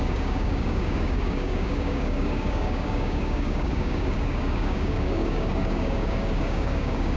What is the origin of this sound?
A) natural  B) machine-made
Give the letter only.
B